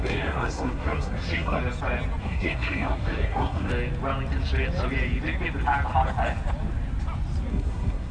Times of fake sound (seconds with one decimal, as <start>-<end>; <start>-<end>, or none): 0.0-1.6; 2.2-3.7; 7.5-8.1